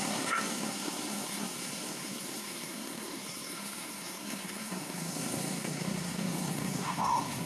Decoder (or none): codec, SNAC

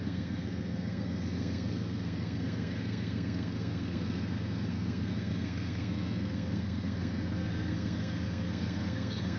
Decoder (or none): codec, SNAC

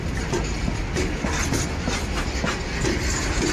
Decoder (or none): none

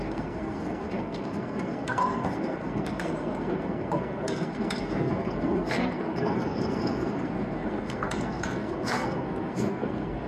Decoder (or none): codec, SNAC